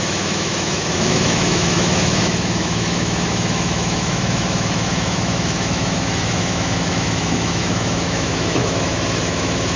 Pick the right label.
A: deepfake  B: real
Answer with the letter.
A